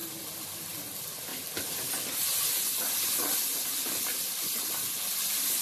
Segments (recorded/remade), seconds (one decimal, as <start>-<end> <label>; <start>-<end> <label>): 0.0-5.6 recorded